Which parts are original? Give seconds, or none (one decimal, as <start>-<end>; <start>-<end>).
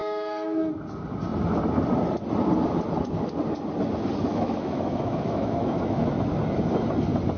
0.7-4.3; 6.1-7.4